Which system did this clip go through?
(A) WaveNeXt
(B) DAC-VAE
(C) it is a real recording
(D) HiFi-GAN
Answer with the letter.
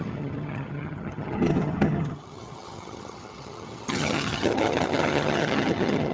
D